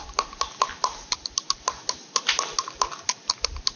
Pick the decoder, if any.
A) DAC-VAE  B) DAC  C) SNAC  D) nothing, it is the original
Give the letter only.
D